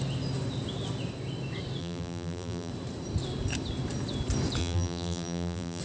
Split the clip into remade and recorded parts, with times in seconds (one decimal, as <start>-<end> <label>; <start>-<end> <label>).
0.0-1.8 recorded; 1.8-2.7 remade; 2.7-4.6 recorded; 4.6-5.8 remade